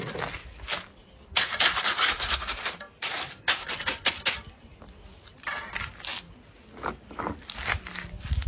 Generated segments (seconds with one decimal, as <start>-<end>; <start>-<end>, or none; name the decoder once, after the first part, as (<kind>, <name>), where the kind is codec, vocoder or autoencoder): none